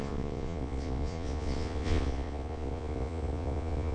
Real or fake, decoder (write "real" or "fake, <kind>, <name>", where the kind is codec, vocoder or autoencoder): fake, vocoder, Vocos